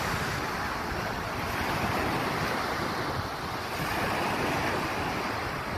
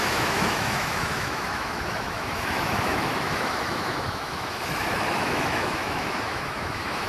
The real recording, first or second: first